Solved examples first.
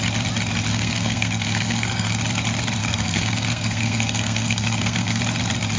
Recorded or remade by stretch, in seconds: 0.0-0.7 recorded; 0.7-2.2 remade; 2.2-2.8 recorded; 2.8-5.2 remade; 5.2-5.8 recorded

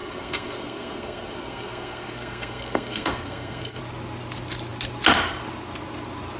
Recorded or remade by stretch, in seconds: 0.0-3.8 remade; 3.8-6.4 recorded